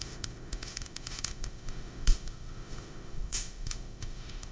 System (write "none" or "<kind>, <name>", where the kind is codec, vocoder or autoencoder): autoencoder, DAC-VAE